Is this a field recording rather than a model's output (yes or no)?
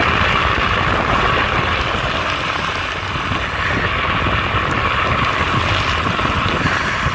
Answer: yes